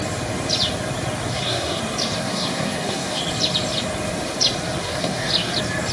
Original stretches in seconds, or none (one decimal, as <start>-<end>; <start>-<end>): 0.0-1.3; 1.8-2.2; 3.2-4.8; 5.3-5.9